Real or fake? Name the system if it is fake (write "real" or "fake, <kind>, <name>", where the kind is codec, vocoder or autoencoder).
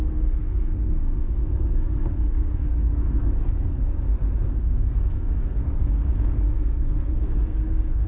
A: fake, codec, SNAC